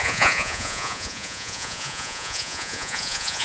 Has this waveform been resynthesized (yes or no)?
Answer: yes